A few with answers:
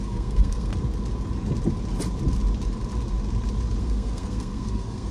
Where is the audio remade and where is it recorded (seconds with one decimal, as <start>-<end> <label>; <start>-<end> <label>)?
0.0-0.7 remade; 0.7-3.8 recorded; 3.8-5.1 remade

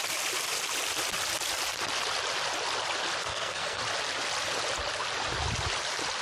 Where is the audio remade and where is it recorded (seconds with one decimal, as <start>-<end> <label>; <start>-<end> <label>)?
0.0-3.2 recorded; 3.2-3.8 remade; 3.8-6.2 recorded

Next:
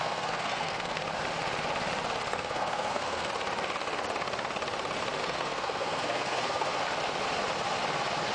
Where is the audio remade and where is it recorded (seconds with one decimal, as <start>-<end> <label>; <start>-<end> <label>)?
0.0-1.0 remade; 1.0-2.3 recorded; 2.3-3.3 remade; 3.3-5.2 recorded; 5.2-6.7 remade; 6.7-8.3 recorded

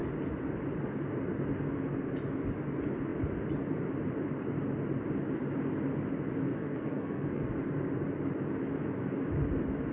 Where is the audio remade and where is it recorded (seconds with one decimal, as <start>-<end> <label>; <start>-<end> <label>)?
0.0-6.5 recorded; 6.5-7.5 remade; 7.5-9.9 recorded